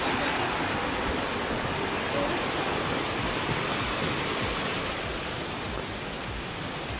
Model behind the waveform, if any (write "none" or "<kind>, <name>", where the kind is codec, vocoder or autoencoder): none